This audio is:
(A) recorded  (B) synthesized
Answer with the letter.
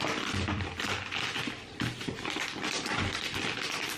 A